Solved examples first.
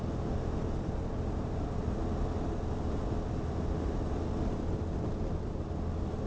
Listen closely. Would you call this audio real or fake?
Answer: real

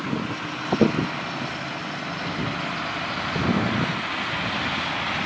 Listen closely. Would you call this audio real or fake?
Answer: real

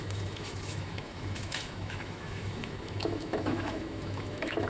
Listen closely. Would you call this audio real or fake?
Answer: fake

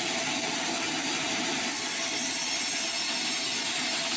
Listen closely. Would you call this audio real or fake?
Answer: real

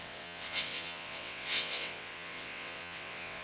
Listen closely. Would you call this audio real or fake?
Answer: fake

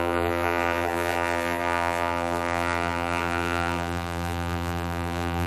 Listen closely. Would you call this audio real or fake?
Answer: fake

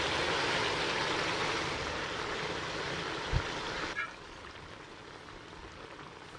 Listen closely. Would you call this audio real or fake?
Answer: real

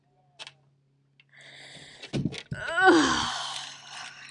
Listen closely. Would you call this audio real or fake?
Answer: real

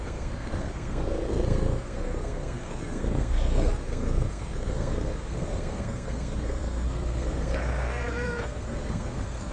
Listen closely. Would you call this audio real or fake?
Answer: fake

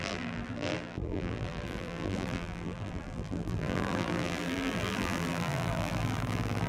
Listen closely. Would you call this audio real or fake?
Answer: fake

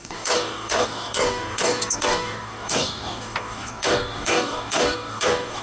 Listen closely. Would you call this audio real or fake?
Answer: fake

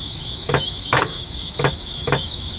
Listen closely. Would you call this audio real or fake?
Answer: fake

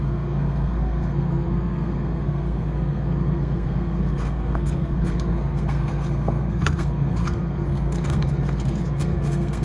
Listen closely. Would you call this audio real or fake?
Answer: fake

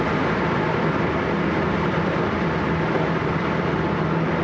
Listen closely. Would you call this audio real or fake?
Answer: fake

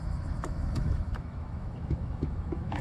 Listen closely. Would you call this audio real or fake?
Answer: fake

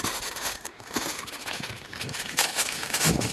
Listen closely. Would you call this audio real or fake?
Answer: fake